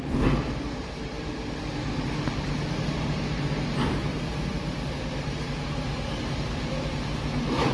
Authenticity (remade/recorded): remade